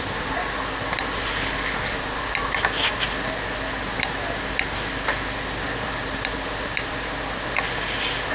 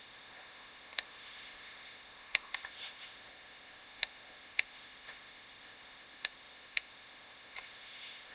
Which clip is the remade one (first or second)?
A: second